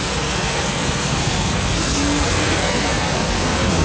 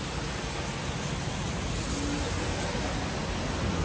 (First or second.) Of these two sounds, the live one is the second